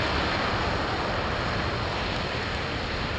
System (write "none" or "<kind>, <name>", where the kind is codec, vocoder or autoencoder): none